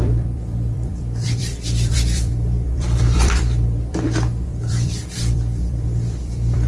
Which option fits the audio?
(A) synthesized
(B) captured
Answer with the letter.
A